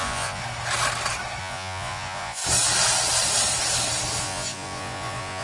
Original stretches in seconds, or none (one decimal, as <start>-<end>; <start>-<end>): 0.4-1.4; 2.4-4.2